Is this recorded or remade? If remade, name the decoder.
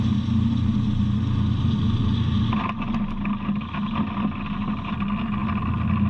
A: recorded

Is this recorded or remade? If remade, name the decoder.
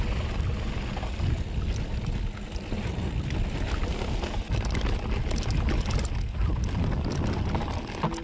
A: recorded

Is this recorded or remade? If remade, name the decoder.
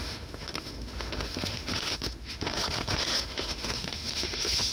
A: remade, autoencoder, DAC-VAE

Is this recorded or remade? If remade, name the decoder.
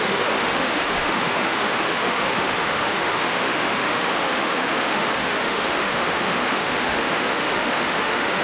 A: remade, autoencoder, DAC-VAE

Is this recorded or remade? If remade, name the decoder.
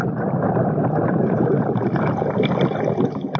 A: recorded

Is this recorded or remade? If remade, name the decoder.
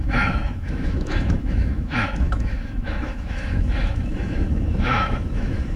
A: remade, autoencoder, DAC-VAE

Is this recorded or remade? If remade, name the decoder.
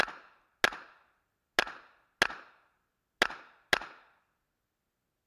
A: recorded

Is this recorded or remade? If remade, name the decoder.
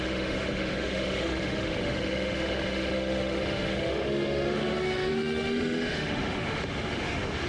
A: remade, autoencoder, DAC-VAE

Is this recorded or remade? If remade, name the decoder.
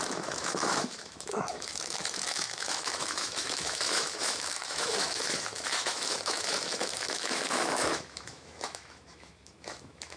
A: remade, autoencoder, DAC-VAE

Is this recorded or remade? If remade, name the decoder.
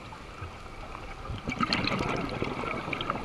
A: recorded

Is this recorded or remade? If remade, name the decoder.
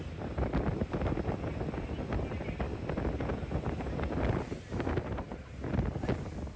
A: recorded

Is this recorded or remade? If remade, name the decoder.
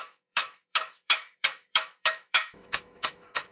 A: remade, autoencoder, DAC-VAE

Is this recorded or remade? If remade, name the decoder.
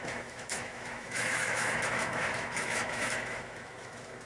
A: remade, autoencoder, DAC-VAE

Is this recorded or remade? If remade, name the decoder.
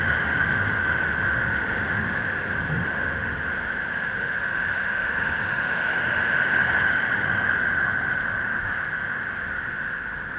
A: remade, autoencoder, DAC-VAE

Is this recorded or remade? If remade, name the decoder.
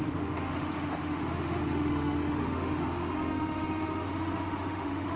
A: remade, autoencoder, DAC-VAE